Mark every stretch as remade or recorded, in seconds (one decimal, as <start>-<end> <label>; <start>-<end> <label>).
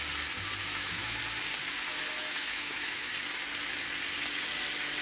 0.0-0.6 recorded; 0.6-1.2 remade; 1.2-2.2 recorded; 2.2-3.1 remade; 3.1-5.0 recorded